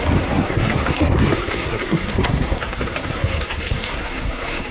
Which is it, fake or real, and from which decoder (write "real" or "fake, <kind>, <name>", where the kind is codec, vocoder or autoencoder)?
fake, codec, SNAC